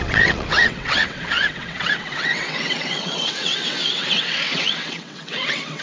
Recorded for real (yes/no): no